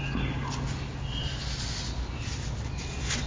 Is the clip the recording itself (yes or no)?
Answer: yes